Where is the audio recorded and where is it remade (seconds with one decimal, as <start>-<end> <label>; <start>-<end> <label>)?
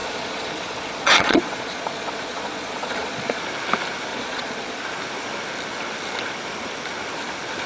0.0-3.4 remade; 3.4-4.1 recorded; 4.1-4.8 remade; 4.8-7.7 recorded